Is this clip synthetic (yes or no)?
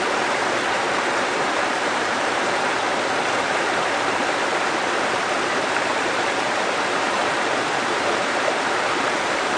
yes